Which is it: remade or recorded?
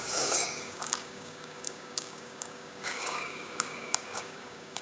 remade